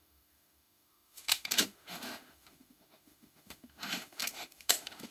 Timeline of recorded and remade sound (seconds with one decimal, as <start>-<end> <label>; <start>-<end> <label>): 0.0-5.1 remade